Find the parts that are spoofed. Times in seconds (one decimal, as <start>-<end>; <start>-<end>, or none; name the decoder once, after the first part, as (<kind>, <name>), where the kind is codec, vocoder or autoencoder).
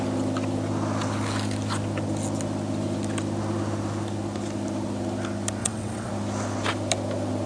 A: 5.6-6.1 (vocoder, WaveNeXt)